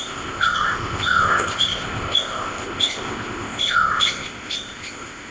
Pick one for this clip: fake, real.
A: fake